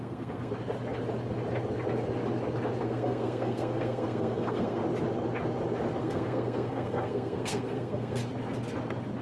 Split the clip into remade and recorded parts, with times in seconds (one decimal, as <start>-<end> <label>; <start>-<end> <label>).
0.0-0.5 remade; 0.5-2.8 recorded; 2.8-4.8 remade; 4.8-6.0 recorded; 6.0-8.2 remade; 8.2-9.2 recorded